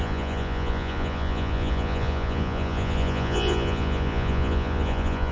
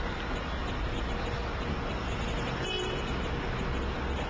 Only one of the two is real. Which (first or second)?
second